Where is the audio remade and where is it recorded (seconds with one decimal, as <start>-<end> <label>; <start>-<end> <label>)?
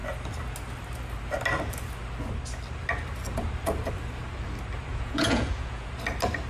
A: 0.0-4.9 recorded; 4.9-5.9 remade; 5.9-6.5 recorded